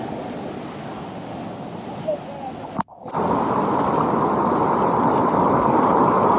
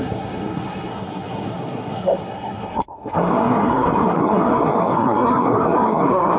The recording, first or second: first